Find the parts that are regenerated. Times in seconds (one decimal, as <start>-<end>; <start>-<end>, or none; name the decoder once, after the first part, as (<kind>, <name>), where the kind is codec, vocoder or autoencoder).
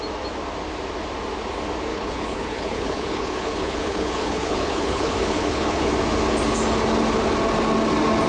1.9-5.9 (codec, HILCodec)